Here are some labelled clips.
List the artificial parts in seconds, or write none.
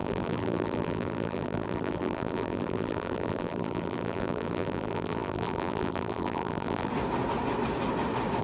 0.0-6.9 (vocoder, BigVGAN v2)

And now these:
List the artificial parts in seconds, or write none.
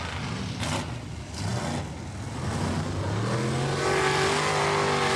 none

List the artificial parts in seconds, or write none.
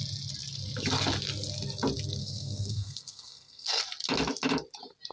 2.2-3.8 (codec, SNAC)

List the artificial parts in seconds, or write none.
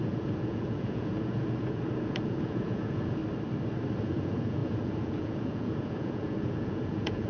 0.0-3.2 (vocoder, Vocos); 4.0-7.3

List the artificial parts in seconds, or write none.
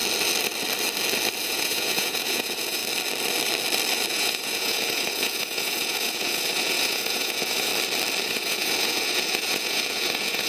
1.4-2.8 (vocoder, Vocos); 4.1-7.7; 8.2-10.5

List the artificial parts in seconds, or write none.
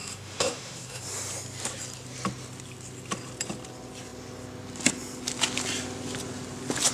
0.0-1.0 (autoencoder, DAC-VAE)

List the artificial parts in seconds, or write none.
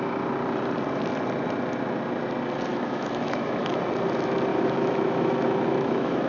2.7-3.7 (autoencoder, DAC-VAE); 4.5-6.3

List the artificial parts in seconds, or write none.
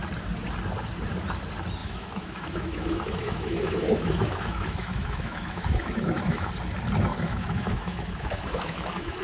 1.8-6.5 (autoencoder, DAC-VAE); 7.1-9.2